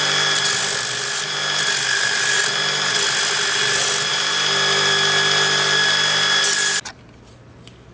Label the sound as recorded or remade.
recorded